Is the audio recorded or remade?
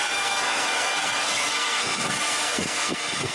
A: remade